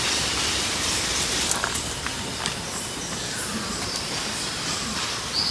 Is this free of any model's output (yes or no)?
yes